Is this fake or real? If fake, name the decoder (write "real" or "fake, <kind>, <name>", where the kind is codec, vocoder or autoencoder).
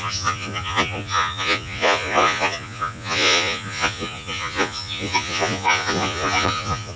fake, vocoder, Vocos